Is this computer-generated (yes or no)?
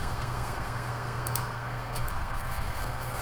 yes